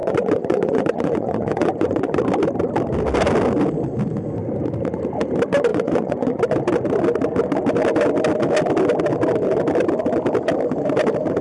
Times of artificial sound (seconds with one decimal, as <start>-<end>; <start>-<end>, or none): 0.0-2.2; 5.7-6.4